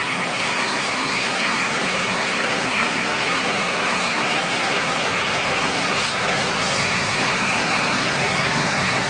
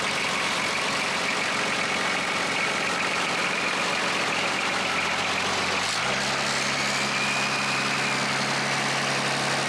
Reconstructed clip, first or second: first